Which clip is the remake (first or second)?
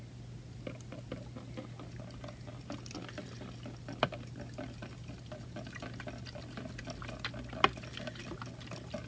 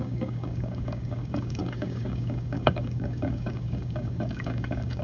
second